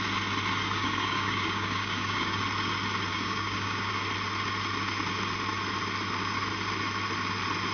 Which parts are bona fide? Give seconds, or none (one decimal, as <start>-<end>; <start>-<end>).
0.0-0.6; 2.4-3.1; 3.9-7.7